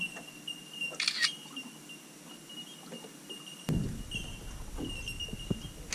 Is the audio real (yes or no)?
yes